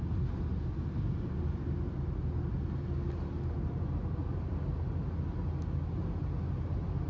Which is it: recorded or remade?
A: recorded